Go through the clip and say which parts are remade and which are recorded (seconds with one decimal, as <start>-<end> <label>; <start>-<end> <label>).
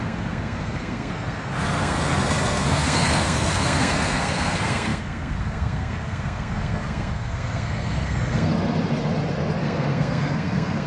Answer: 0.0-8.5 remade; 8.5-9.6 recorded; 9.6-10.9 remade